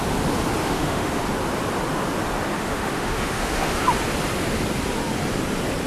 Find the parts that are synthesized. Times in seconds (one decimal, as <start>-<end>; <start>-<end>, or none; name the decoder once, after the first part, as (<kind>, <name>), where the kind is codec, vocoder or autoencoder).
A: 0.6-1.2 (autoencoder, DAC-VAE); 2.5-3.8